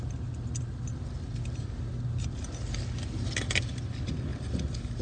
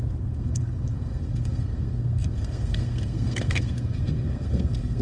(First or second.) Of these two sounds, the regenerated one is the second